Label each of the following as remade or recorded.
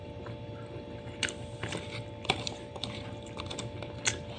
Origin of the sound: recorded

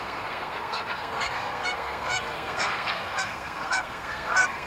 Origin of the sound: remade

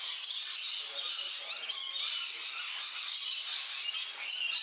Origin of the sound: recorded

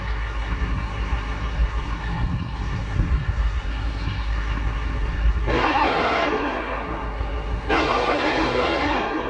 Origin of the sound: remade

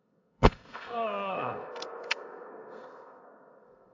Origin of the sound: remade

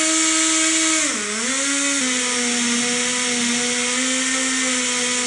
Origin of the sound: recorded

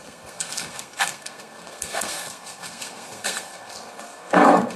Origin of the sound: remade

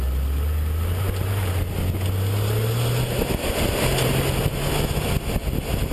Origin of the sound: recorded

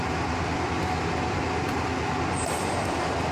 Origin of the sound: recorded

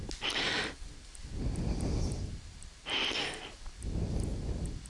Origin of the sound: recorded